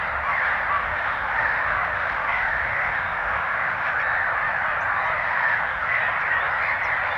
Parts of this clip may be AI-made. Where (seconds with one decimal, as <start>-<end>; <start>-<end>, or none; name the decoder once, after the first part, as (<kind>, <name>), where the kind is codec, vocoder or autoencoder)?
0.8-3.9 (autoencoder, DAC-VAE); 5.2-6.0